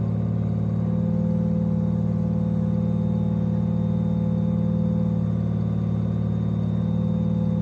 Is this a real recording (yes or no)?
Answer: yes